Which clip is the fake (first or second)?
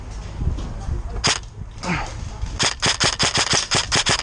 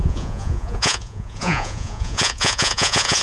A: second